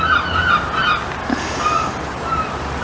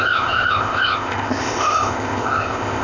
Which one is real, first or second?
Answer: first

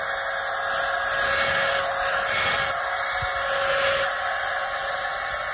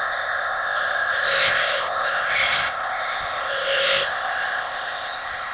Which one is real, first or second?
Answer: first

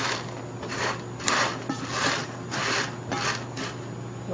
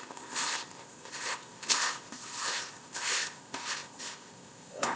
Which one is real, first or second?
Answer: first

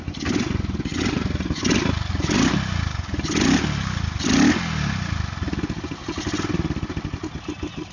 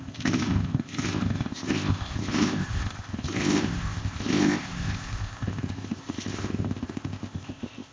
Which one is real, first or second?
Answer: first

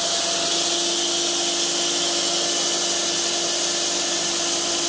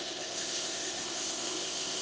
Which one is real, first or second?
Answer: first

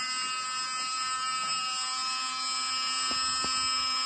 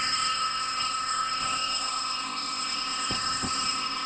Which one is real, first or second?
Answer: first